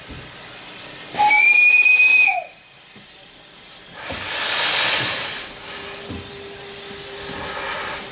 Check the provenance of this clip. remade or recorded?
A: recorded